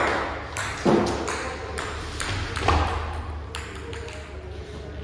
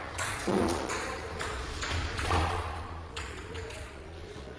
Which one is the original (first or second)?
first